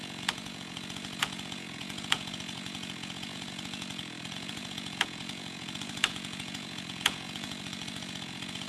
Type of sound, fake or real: fake